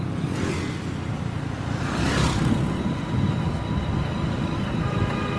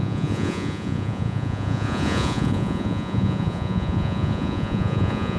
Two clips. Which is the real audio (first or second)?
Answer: first